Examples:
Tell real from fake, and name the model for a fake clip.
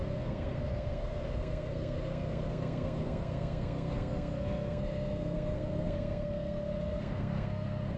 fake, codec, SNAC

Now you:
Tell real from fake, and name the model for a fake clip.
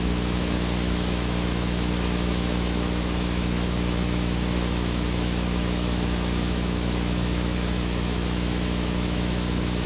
fake, autoencoder, DAC-VAE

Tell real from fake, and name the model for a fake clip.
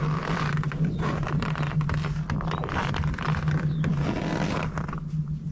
real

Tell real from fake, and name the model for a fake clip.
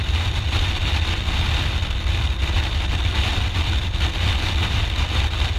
real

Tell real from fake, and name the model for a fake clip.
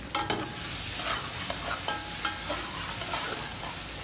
real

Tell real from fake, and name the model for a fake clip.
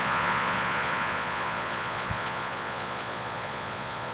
fake, vocoder, Vocos